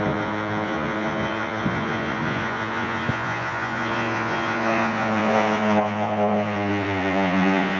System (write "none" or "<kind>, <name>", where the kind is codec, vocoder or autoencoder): vocoder, Vocos